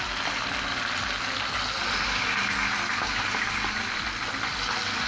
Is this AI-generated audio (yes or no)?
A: no